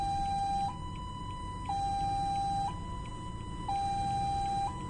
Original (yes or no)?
yes